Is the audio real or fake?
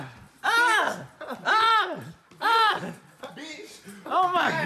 real